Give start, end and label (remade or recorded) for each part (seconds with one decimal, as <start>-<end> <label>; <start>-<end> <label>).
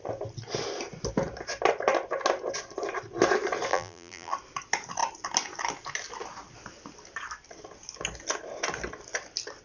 0.0-3.7 recorded; 3.7-4.3 remade; 4.3-9.6 recorded